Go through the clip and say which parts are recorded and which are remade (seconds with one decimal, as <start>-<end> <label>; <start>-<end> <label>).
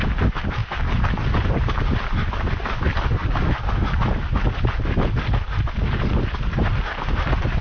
0.0-7.6 recorded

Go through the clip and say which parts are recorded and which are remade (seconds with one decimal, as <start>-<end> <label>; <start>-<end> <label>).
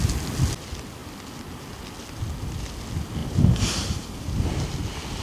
0.0-3.2 recorded; 3.2-4.5 remade; 4.5-5.2 recorded